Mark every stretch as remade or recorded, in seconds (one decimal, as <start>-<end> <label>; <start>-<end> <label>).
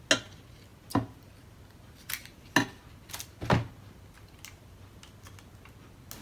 0.0-6.2 recorded